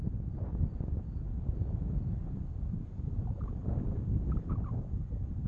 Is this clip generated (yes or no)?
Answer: no